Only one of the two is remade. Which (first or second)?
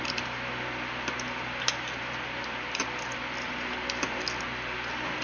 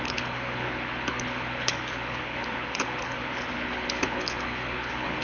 second